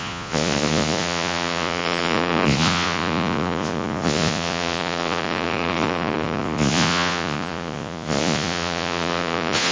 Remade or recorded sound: remade